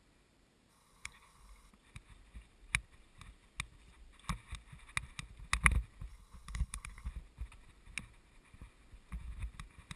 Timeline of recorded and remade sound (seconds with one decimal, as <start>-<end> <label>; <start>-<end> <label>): 0.0-0.7 recorded; 0.7-1.7 remade; 1.7-6.1 recorded; 6.1-7.1 remade; 7.1-10.0 recorded